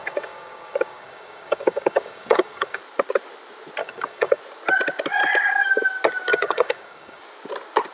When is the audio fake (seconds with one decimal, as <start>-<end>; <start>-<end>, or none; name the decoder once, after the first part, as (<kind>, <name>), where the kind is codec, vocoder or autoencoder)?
0.0-2.8 (codec, DAC); 3.8-4.4; 6.3-7.2